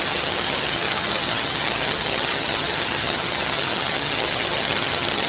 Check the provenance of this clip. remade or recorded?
remade